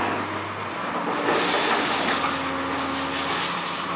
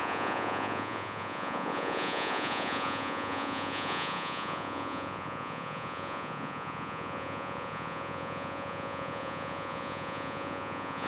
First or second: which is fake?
second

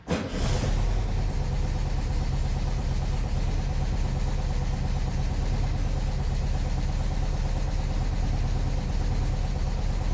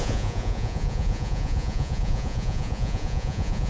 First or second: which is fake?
second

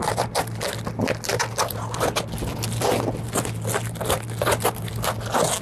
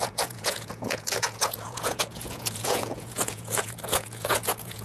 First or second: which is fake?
second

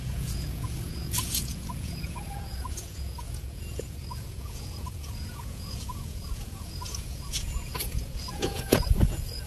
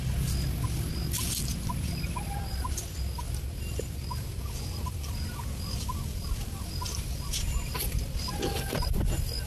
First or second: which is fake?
first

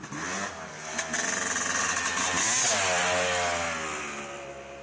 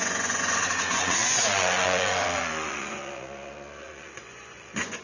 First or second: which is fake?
second